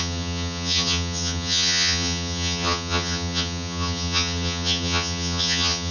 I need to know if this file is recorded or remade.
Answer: remade